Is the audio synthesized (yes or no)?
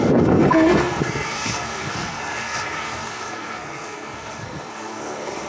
yes